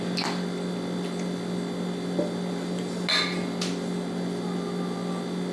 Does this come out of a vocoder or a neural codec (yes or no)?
no